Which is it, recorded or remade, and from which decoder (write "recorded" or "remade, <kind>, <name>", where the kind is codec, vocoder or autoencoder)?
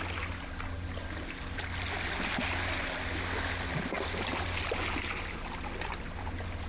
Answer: recorded